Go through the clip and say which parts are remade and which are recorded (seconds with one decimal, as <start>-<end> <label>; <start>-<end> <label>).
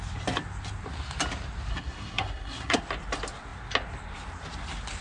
0.0-1.7 recorded; 1.7-2.8 remade; 2.8-5.0 recorded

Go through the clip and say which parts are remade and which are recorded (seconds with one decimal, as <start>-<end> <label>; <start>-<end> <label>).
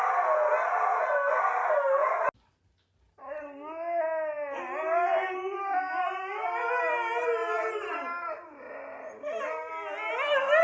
0.0-7.4 recorded; 7.4-9.4 remade; 9.4-10.6 recorded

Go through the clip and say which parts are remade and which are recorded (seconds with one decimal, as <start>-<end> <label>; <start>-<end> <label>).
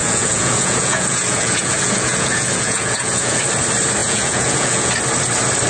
0.0-3.4 remade; 3.4-4.0 recorded; 4.0-4.9 remade; 4.9-5.7 recorded